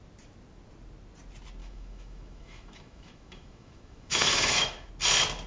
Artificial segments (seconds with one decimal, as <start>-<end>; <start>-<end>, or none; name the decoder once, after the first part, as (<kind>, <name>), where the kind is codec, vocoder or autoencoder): 1.6-4.9 (autoencoder, DAC-VAE)